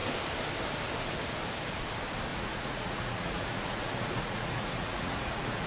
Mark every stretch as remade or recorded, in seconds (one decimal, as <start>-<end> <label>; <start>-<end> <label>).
0.0-2.3 recorded; 2.3-5.7 remade